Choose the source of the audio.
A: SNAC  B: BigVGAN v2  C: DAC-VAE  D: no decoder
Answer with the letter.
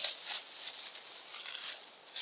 D